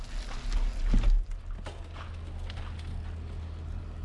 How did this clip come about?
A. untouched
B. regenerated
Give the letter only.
A